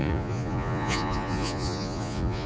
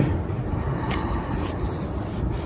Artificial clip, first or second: first